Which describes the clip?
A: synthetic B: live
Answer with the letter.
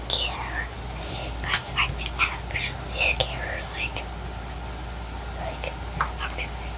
B